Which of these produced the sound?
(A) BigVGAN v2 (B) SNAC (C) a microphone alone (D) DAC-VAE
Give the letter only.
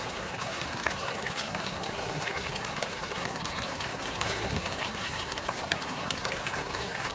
B